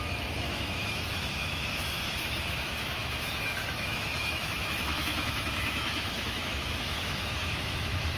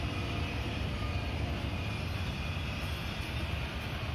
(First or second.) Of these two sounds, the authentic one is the second